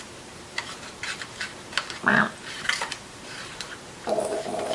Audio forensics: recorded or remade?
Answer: remade